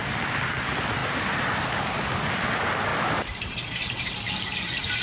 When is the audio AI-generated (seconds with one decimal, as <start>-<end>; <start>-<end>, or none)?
1.0-1.9; 2.9-4.3